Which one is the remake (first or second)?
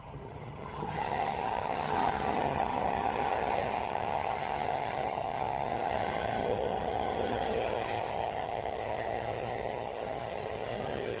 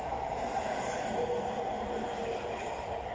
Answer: first